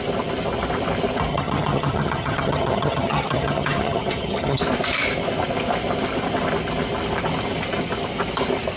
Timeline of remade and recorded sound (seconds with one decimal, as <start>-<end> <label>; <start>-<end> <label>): 0.0-1.3 recorded; 1.3-4.6 remade; 4.6-8.8 recorded